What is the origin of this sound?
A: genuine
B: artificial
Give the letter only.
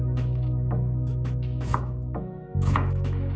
B